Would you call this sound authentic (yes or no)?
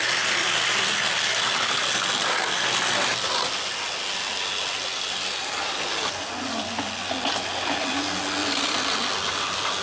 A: yes